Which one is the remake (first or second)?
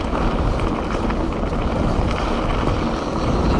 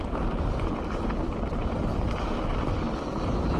second